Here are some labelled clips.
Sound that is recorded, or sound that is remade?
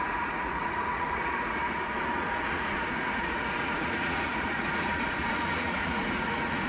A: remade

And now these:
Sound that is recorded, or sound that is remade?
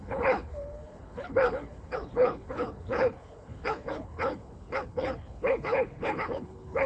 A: remade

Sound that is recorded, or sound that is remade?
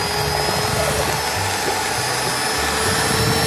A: recorded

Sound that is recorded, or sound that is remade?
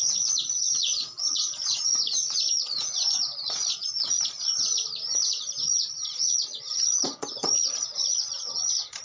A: remade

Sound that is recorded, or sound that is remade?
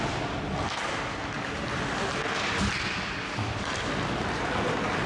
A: recorded